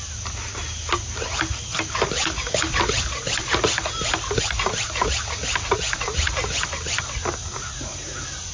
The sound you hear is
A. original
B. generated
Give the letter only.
A